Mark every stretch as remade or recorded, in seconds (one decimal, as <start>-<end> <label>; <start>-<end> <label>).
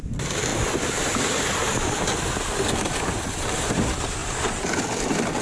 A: 0.0-0.5 remade; 0.5-3.7 recorded; 3.7-4.2 remade; 4.2-5.4 recorded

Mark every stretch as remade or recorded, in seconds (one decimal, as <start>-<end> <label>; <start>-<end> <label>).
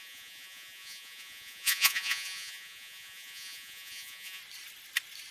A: 0.0-4.4 remade; 4.4-5.3 recorded